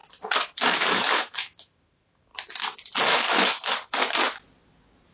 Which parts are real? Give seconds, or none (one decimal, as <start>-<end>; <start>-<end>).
0.0-0.6; 2.3-3.0; 4.0-5.1